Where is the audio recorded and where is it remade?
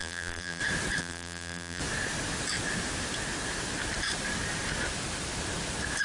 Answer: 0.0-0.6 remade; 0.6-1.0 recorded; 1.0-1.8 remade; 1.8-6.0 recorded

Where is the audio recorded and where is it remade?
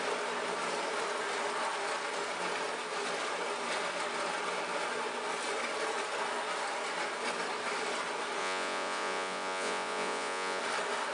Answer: 0.0-8.4 recorded; 8.4-10.6 remade; 10.6-11.1 recorded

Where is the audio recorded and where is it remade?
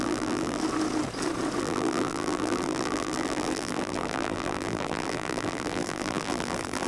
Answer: 0.0-0.6 remade; 0.6-1.6 recorded; 1.6-6.9 remade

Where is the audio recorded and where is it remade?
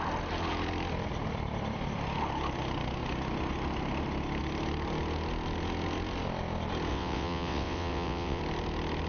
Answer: 0.0-6.9 recorded; 6.9-8.4 remade; 8.4-9.1 recorded